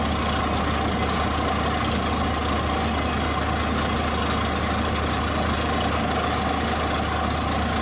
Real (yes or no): yes